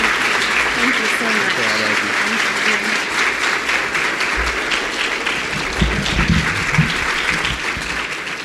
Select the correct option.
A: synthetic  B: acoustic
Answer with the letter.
B